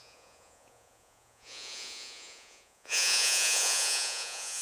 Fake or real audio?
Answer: fake